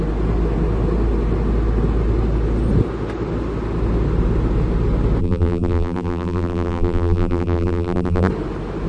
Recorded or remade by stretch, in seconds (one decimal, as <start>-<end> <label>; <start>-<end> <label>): 0.0-5.2 recorded; 5.2-8.3 remade; 8.3-8.9 recorded